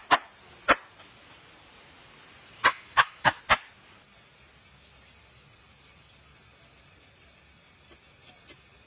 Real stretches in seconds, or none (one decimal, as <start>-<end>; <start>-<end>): 0.0-2.7; 3.4-8.9